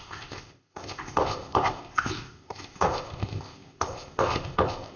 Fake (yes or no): yes